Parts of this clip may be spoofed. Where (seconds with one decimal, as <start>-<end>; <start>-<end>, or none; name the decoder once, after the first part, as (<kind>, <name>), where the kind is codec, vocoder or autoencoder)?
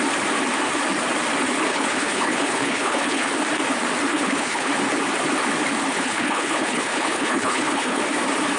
1.7-3.3 (codec, HILCodec); 4.1-4.7; 5.9-8.0